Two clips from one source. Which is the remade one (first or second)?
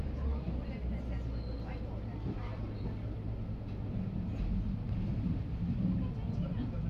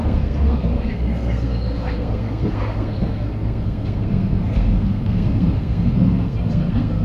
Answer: second